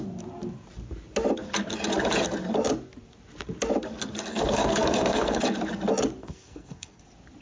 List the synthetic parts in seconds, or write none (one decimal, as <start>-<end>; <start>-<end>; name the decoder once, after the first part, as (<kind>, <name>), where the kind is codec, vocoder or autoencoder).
4.3-5.4 (codec, SNAC); 6.2-7.0